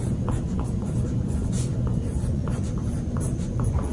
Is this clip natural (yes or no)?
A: no